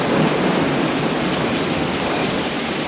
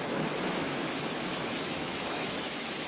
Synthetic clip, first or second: second